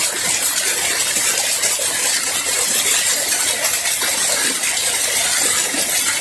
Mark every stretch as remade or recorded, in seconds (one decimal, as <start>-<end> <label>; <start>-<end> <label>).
0.0-6.2 recorded